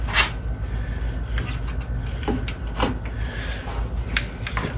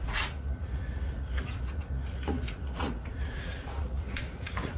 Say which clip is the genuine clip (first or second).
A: first